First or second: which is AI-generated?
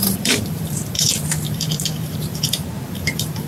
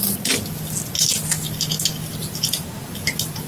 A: first